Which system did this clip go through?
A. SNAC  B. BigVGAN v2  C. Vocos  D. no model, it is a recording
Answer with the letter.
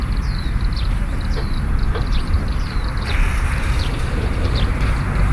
B